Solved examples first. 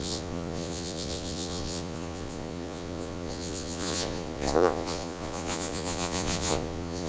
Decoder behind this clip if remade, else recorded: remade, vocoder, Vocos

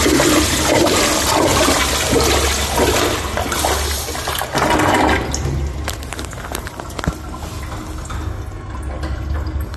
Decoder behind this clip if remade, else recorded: recorded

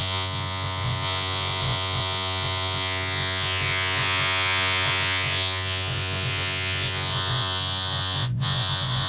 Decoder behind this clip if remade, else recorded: remade, vocoder, Vocos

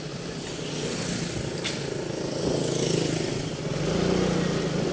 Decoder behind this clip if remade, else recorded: recorded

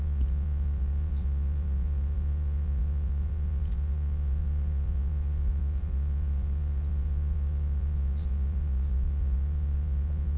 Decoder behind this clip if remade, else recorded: remade, vocoder, Vocos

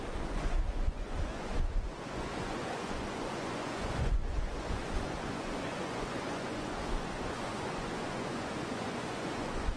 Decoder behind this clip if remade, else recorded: remade, vocoder, Vocos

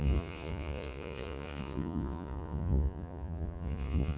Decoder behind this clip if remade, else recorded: remade, vocoder, Vocos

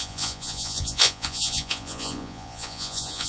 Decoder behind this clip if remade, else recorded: remade, vocoder, Vocos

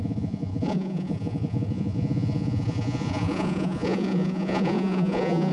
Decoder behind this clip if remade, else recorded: remade, vocoder, Vocos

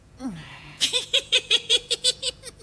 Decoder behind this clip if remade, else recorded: remade, vocoder, Vocos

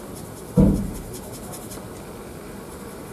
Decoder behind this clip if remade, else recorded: recorded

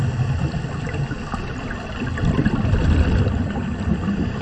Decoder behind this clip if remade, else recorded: recorded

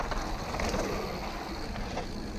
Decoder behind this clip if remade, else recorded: recorded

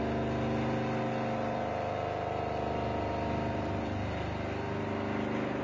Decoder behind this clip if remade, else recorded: recorded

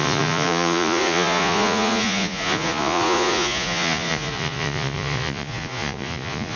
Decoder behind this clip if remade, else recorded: remade, vocoder, Vocos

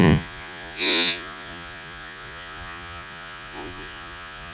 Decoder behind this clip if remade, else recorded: remade, vocoder, Vocos